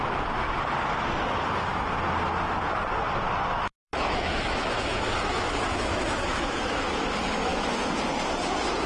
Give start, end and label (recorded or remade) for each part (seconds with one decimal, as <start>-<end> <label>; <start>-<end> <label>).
0.0-3.5 recorded; 3.5-7.1 remade; 7.1-8.9 recorded